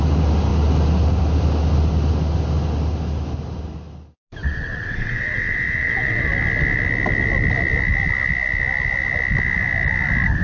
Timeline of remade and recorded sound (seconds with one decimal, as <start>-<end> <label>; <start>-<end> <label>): 0.0-4.4 recorded; 4.4-6.3 remade; 6.3-10.4 recorded